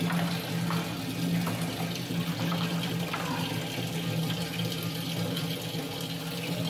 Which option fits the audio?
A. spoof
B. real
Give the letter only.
B